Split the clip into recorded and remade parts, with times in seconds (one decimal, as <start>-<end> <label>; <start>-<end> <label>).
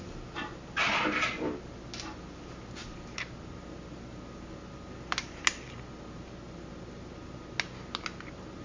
0.0-8.6 recorded